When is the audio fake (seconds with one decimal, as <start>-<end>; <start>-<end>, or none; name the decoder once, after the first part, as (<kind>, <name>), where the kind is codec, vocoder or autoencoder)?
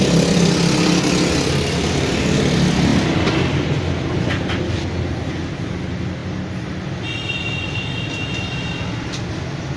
none